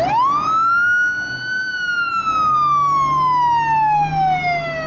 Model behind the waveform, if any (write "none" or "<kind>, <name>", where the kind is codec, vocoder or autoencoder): none